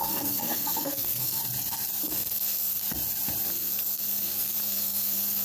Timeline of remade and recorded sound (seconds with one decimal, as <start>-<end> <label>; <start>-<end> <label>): 0.0-1.4 remade; 1.4-2.0 recorded; 2.0-2.8 remade; 2.8-3.5 recorded; 3.5-5.4 remade